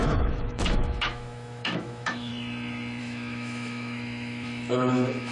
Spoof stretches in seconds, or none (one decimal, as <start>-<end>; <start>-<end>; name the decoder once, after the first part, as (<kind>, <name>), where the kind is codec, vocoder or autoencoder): 0.0-2.3 (autoencoder, DAC-VAE); 3.0-5.3